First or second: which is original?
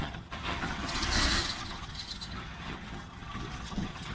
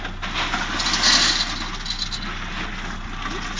second